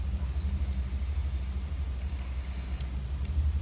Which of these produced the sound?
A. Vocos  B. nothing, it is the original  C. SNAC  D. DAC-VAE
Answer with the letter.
B